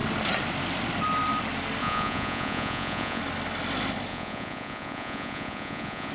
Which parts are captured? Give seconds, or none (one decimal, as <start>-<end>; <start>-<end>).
0.0-1.8; 3.2-4.1